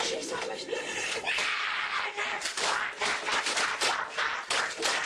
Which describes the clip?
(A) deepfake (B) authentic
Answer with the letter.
B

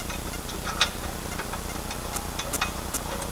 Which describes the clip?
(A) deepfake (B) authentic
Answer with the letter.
B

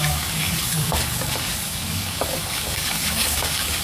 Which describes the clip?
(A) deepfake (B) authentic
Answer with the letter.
A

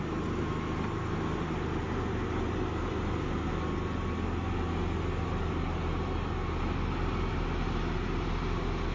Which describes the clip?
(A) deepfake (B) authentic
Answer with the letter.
B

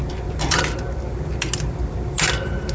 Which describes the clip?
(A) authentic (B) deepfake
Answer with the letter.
A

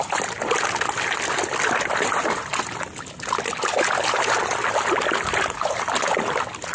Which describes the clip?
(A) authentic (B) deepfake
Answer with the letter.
A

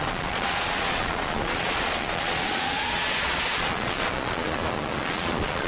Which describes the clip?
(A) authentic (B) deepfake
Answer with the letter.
B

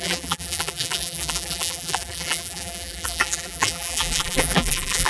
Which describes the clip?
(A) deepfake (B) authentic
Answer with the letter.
A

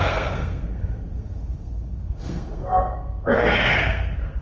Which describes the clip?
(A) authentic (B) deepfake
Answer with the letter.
B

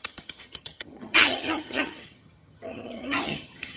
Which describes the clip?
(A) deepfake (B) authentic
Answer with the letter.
A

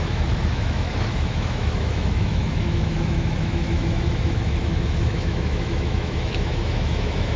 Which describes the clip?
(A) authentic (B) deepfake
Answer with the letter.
B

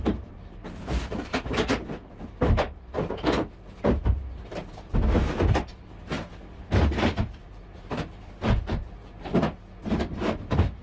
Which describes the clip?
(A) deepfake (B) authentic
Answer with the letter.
A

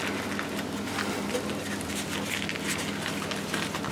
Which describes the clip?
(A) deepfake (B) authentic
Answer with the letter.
B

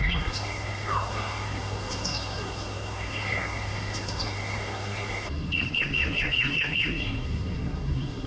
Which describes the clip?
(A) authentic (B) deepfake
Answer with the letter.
B